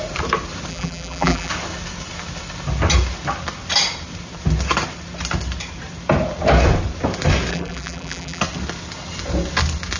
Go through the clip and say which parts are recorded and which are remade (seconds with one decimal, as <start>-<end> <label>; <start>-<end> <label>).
0.0-0.7 recorded; 0.7-1.5 remade; 1.5-7.5 recorded; 7.5-8.4 remade; 8.4-10.0 recorded